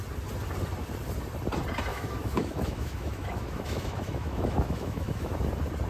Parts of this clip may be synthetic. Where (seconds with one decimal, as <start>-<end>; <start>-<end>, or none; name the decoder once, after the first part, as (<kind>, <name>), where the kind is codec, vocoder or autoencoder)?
1.9-5.4 (autoencoder, DAC-VAE)